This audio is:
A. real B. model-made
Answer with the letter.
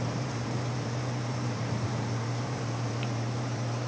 B